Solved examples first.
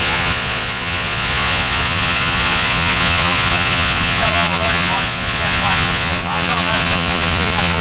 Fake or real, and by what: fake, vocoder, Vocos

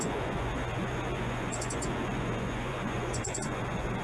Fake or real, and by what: fake, vocoder, Vocos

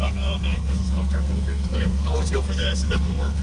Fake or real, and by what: fake, codec, SNAC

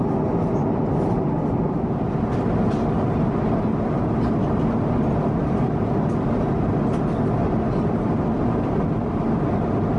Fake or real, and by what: real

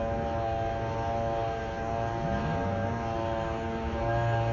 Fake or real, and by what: real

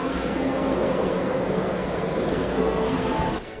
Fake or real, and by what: fake, codec, SNAC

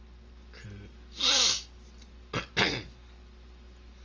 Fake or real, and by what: real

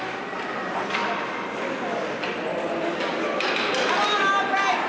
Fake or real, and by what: real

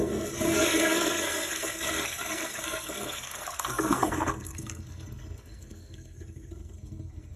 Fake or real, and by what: fake, codec, SNAC